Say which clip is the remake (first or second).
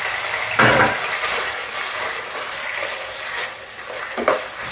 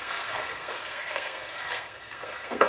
second